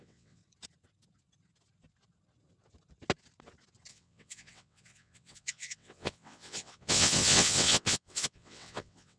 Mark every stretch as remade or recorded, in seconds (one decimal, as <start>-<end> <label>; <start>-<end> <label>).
0.0-0.4 remade; 0.4-3.9 recorded; 3.9-9.2 remade